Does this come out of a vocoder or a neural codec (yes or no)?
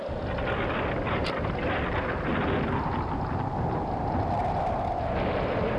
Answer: no